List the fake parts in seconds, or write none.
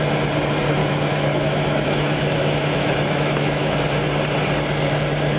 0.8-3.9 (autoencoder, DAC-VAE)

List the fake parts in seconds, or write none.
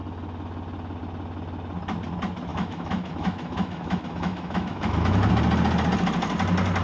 2.5-5.3 (autoencoder, DAC-VAE)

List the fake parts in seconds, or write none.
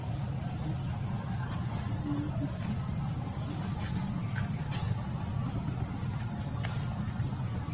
none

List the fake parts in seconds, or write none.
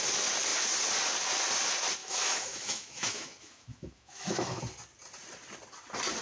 2.0-4.6 (autoencoder, DAC-VAE)